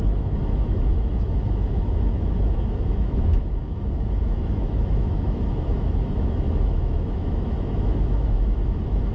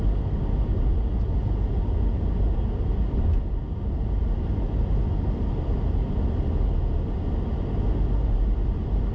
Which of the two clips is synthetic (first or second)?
first